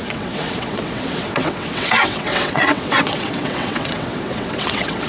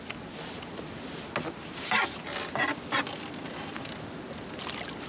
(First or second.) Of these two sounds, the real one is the second